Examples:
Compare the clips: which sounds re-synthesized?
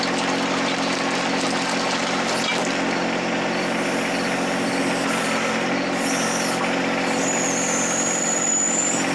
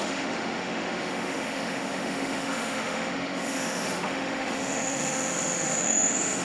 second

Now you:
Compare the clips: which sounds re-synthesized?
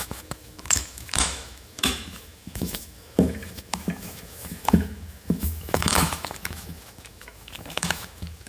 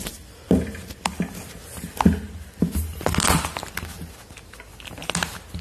first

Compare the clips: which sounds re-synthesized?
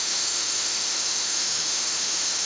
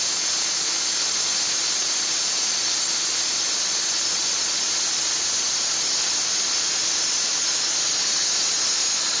first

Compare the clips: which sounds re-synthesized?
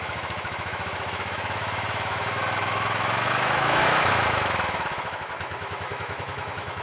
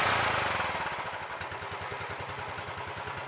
first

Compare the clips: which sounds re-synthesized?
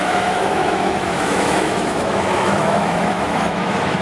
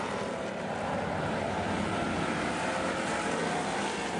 first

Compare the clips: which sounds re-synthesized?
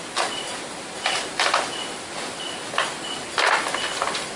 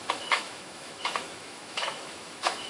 second